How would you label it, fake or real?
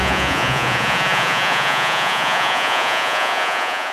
fake